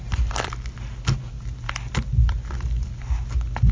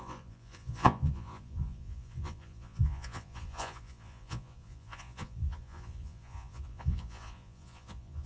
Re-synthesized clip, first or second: second